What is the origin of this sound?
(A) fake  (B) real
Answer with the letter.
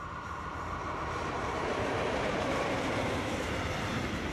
A